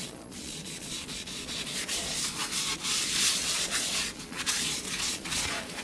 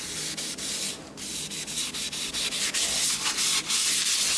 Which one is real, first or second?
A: second